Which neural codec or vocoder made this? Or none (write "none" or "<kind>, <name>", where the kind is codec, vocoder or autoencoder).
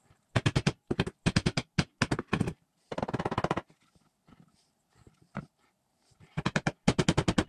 none